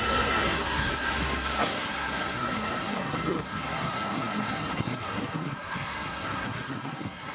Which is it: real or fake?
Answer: fake